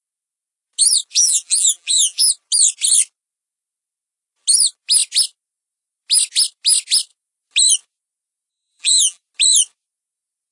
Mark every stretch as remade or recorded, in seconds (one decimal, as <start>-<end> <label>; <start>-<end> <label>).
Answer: 0.0-1.1 recorded; 1.1-2.3 remade; 2.3-8.5 recorded; 8.5-9.2 remade; 9.2-10.5 recorded